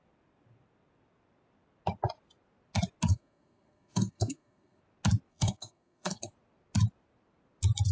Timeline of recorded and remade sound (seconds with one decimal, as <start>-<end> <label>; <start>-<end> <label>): 0.0-3.1 recorded; 3.1-4.8 remade; 4.8-5.3 recorded; 5.3-6.3 remade; 6.3-7.9 recorded